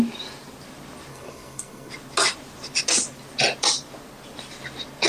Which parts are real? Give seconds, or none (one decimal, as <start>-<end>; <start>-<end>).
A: 0.0-1.1; 1.9-5.1